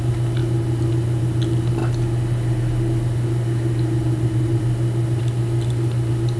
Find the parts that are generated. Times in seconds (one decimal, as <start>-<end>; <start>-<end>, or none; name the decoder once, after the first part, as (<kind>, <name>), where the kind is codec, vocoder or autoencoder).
none